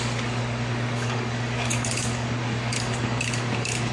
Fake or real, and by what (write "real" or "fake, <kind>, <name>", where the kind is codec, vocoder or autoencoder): fake, codec, DAC